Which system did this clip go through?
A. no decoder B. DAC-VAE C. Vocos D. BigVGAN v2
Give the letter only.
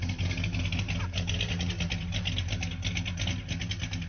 A